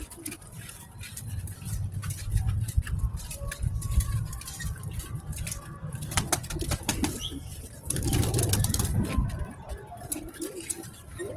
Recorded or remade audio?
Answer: remade